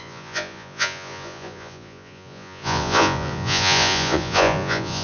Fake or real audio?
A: fake